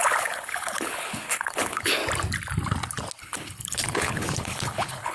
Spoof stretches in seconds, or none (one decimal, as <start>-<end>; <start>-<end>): 0.0-2.0; 3.2-5.1

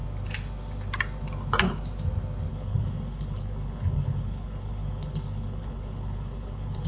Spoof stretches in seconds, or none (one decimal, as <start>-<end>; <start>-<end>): 2.5-6.9

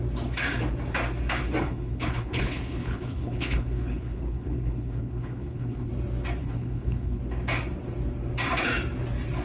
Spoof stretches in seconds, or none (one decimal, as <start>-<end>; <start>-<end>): 1.6-5.9; 6.4-7.2

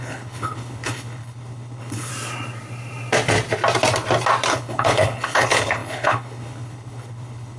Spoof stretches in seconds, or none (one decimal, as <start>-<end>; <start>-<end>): 0.0-2.1; 4.5-7.6

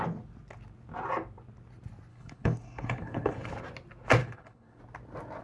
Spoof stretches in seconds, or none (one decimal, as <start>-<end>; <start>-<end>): 2.1-3.5; 4.2-4.8